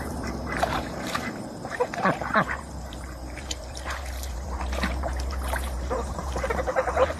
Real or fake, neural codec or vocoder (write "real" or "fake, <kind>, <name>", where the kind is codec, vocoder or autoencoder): fake, vocoder, BigVGAN v2